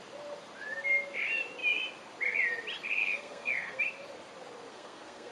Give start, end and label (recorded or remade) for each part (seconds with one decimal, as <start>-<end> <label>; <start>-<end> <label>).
0.0-3.0 recorded; 3.0-3.8 remade; 3.8-4.7 recorded; 4.7-5.3 remade